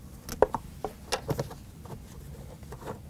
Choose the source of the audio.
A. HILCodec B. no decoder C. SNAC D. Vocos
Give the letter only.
B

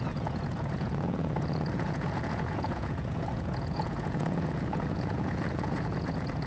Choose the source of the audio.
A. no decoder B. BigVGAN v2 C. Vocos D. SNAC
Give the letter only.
C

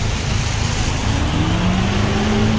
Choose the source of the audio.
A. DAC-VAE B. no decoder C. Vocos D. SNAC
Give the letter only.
B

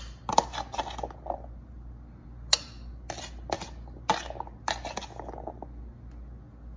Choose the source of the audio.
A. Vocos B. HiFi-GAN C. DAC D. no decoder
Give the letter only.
D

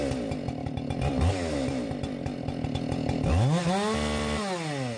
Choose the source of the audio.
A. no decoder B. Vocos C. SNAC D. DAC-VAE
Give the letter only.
A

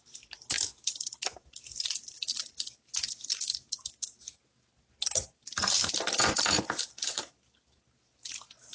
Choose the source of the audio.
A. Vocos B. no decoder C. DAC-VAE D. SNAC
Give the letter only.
B